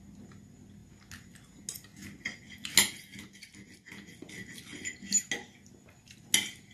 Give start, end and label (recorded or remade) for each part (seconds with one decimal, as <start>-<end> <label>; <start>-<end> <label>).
0.0-6.7 recorded